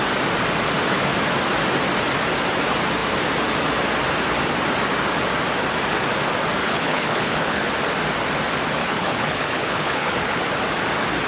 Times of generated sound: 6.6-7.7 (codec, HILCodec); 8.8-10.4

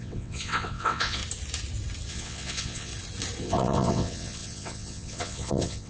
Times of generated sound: 0.0-1.2 (vocoder, WaveNeXt); 2.1-2.9; 3.4-5.9

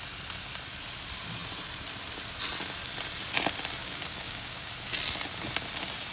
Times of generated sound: 3.8-4.7 (codec, DAC)

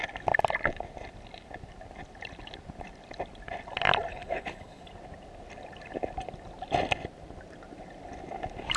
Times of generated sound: 4.1-4.9 (codec, HILCodec)

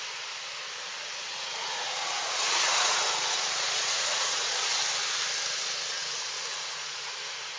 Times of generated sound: 1.3-4.5 (vocoder, Vocos); 6.0-7.1

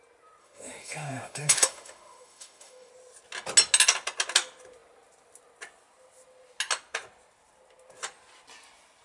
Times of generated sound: 0.4-2.9 (autoencoder, DAC-VAE)

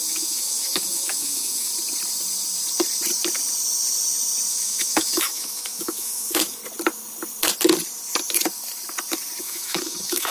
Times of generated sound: 0.0-1.7 (autoencoder, DAC-VAE); 4.5-6.6; 9.4-10.3